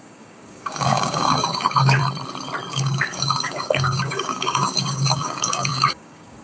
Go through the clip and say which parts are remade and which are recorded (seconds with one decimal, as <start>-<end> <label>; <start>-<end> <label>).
0.0-2.0 remade; 2.0-2.7 recorded; 2.7-6.4 remade